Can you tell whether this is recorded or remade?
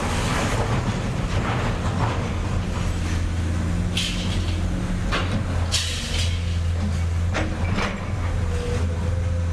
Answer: recorded